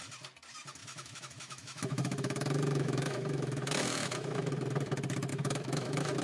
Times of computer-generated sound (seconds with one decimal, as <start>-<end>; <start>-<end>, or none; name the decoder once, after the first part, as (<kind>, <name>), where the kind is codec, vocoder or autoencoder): 0.8-4.5 (autoencoder, DAC-VAE); 5.3-6.2